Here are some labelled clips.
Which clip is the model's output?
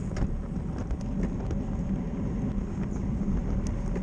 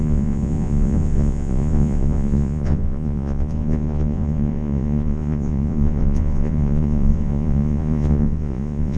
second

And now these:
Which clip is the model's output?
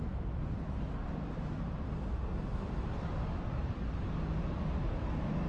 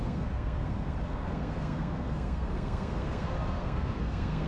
second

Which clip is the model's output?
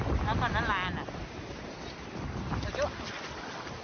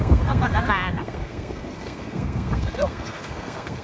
second